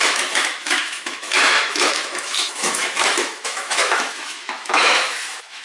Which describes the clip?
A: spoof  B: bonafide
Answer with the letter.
A